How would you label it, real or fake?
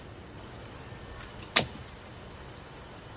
real